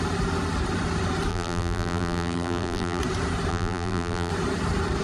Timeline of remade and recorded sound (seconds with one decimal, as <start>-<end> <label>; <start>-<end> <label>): 0.0-1.3 recorded; 1.3-3.0 remade; 3.0-3.5 recorded; 3.5-4.3 remade; 4.3-5.0 recorded